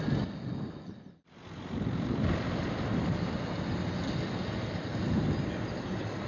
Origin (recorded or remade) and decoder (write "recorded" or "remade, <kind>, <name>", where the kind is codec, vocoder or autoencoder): recorded